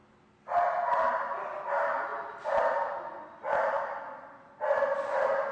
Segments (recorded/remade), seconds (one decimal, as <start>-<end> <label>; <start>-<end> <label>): 0.0-1.0 recorded; 1.0-2.1 remade; 2.1-5.5 recorded